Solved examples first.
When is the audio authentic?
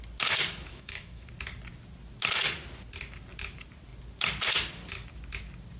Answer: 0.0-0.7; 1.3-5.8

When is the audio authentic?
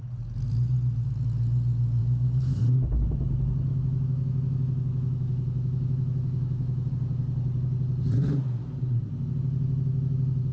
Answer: 0.0-2.0; 2.6-3.7; 6.9-10.5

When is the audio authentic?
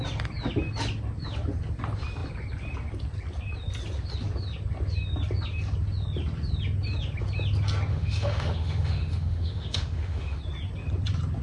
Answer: 0.0-7.9; 10.4-11.4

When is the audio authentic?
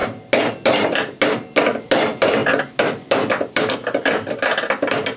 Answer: 0.0-5.2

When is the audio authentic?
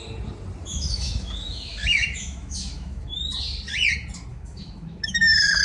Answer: 0.0-0.7; 3.3-4.3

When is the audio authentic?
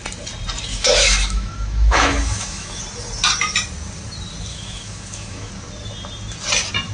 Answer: 0.0-0.7; 2.8-4.5; 5.5-6.9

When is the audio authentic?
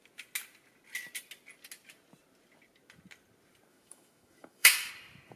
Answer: 0.0-3.7; 4.9-5.4